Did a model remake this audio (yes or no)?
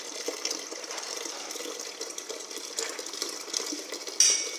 no